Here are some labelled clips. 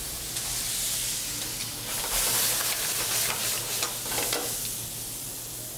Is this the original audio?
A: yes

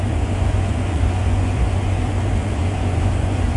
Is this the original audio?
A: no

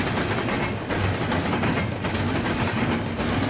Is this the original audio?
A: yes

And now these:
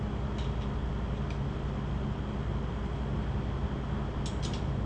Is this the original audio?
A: yes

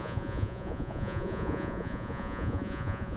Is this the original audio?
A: no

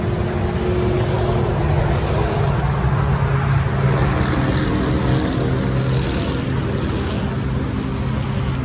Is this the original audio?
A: yes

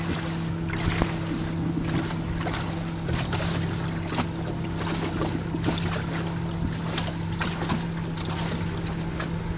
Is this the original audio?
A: yes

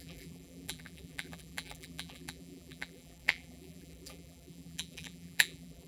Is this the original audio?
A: no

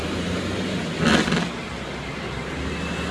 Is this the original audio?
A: yes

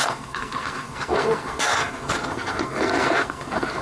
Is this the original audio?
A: no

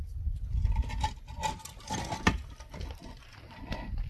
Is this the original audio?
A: yes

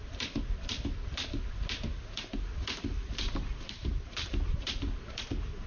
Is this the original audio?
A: yes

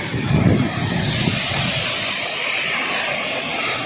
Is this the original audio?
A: yes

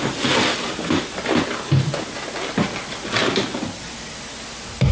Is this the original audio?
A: yes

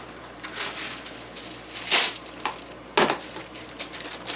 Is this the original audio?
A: yes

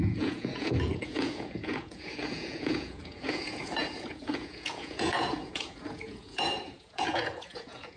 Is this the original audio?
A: no